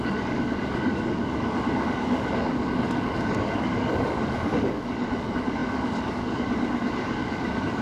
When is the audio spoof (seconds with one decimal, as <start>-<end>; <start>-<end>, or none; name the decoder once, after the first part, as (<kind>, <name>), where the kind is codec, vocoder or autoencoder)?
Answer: 0.0-7.8 (codec, DAC)